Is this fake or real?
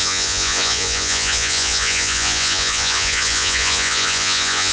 fake